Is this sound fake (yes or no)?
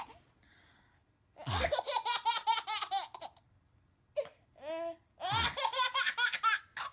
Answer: no